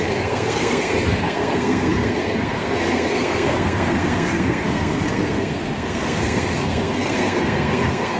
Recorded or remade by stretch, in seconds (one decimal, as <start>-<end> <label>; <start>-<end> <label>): 0.0-8.2 remade